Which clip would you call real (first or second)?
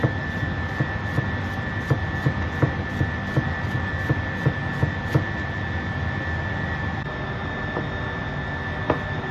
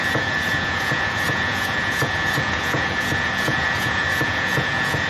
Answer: first